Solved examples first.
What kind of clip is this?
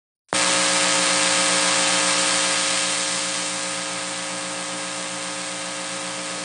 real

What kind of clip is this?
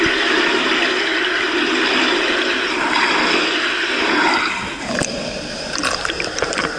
real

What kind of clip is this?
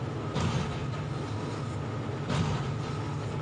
real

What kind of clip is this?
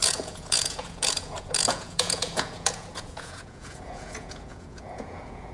fake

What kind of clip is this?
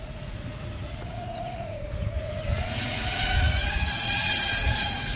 fake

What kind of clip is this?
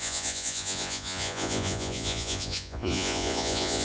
fake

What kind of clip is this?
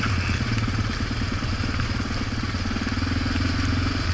real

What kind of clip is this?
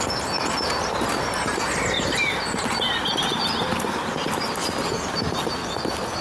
real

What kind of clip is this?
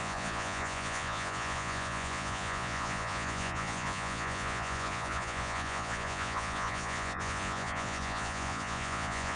fake